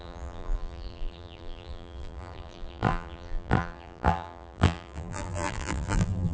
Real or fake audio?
fake